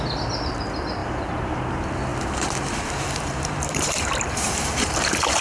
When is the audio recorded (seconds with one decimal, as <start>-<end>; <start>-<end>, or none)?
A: 0.0-1.0; 1.6-2.1